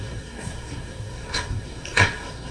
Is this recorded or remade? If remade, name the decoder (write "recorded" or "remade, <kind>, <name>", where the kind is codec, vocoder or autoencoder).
remade, codec, SNAC